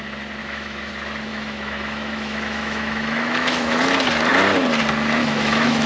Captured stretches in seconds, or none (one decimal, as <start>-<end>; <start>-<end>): 0.0-0.4; 0.9-1.3; 3.8-5.2